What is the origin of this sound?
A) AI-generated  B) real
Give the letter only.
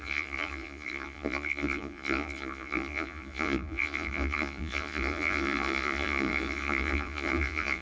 A